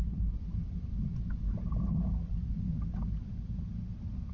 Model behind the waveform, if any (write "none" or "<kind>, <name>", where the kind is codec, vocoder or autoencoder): none